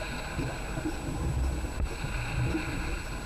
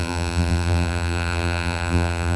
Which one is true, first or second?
first